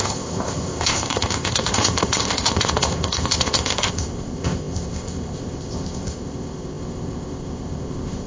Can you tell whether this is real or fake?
fake